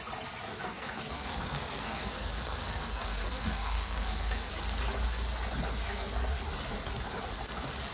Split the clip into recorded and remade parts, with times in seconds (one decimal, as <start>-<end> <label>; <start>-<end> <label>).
0.0-0.5 recorded; 0.5-4.5 remade; 4.5-5.8 recorded; 5.8-6.4 remade; 6.4-7.9 recorded